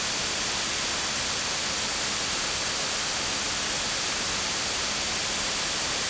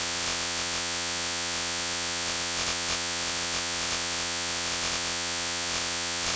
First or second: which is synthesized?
second